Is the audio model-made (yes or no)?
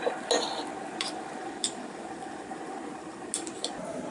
no